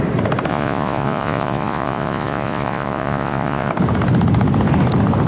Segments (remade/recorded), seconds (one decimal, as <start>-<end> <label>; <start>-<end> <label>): 0.0-0.5 recorded; 0.5-3.7 remade; 3.7-5.3 recorded